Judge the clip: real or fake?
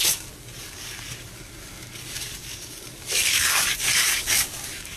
fake